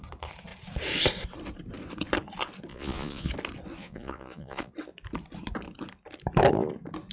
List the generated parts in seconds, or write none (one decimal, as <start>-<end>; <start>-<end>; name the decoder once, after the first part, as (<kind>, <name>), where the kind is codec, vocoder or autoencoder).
2.7-3.3 (vocoder, Vocos); 3.8-4.7